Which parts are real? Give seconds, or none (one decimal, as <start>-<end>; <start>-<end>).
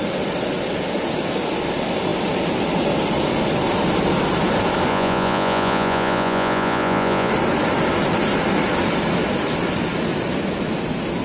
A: 0.0-4.9; 7.3-11.2